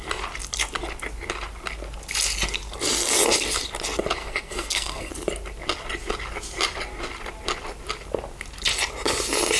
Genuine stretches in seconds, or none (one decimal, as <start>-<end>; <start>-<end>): 0.0-4.2; 5.1-9.6